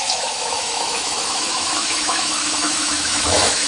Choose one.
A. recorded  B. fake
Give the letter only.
B